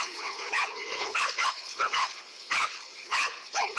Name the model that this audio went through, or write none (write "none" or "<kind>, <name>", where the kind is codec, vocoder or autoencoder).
codec, HILCodec